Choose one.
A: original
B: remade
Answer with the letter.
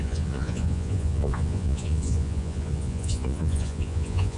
B